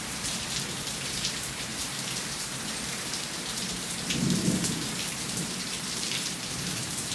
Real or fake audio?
fake